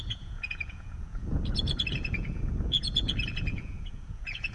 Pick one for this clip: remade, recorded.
remade